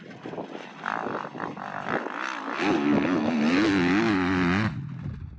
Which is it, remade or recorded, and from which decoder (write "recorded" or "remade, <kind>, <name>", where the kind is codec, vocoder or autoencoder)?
recorded